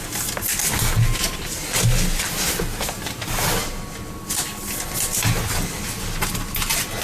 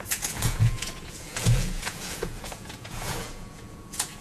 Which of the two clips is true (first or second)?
first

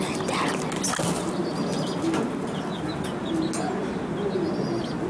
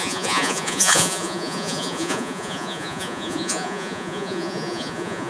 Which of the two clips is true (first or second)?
first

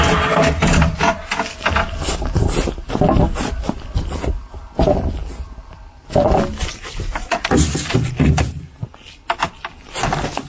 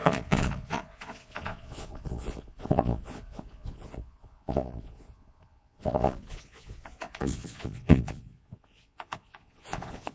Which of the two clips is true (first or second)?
first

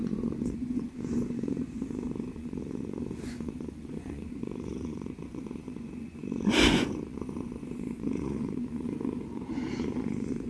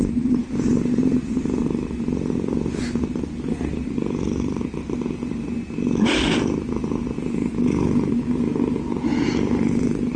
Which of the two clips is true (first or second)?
second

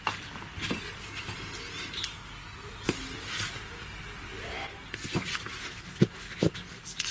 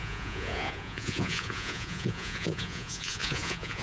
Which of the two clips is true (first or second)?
first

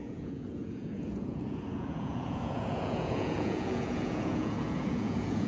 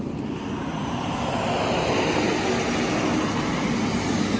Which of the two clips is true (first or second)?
second